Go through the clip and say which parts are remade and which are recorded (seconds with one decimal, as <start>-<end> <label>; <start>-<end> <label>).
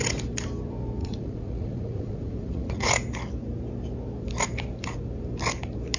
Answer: 0.0-1.0 recorded; 1.0-2.9 remade; 2.9-6.0 recorded